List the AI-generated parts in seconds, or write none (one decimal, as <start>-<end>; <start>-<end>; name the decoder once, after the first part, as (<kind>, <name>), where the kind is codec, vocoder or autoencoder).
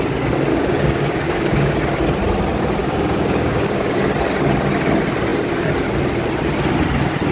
0.5-1.8 (codec, DAC); 2.8-4.0